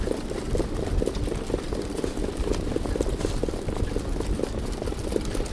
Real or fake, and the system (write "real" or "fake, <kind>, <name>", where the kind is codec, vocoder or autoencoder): real